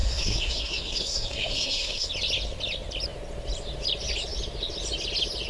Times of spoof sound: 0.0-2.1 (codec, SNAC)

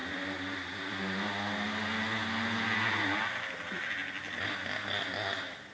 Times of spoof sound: none

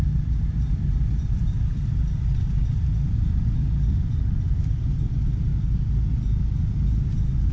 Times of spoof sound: 0.0-2.6 (vocoder, BigVGAN v2); 4.5-5.5; 7.1-7.5

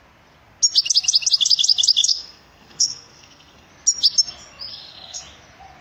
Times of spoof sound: 2.0-3.7 (codec, SNAC); 4.7-5.2

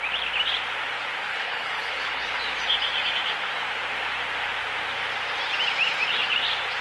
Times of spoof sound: 1.3-2.4 (codec, HILCodec)